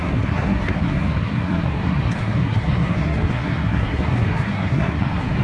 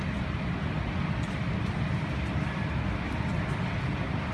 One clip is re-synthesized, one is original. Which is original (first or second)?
second